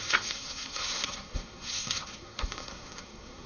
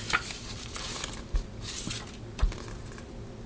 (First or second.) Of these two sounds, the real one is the second